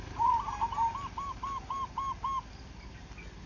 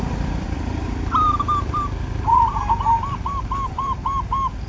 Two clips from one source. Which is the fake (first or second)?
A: second